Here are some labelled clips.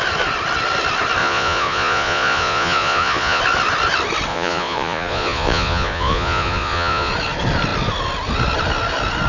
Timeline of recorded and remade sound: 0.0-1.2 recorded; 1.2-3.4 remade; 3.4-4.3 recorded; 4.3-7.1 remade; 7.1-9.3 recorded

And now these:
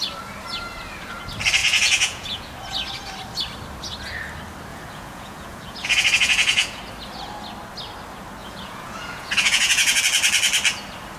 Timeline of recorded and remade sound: 0.0-1.6 recorded; 1.6-2.5 remade; 2.5-4.7 recorded; 4.7-6.8 remade; 6.8-8.4 recorded; 8.4-10.0 remade; 10.0-11.2 recorded

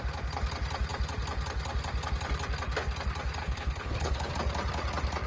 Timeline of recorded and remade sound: 0.0-3.4 recorded; 3.4-4.3 remade; 4.3-5.3 recorded